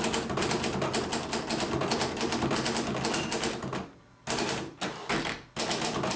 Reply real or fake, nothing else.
real